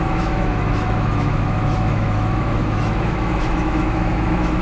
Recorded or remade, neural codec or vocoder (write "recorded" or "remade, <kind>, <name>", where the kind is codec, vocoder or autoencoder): remade, autoencoder, DAC-VAE